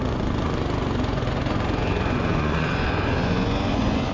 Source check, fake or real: fake